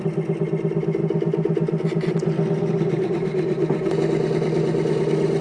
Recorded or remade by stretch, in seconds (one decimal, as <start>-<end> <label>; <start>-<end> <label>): 0.0-5.4 recorded